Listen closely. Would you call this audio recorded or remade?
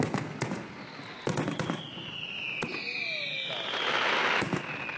recorded